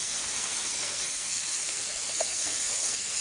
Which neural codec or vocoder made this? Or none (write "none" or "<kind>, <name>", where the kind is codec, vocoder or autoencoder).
codec, SNAC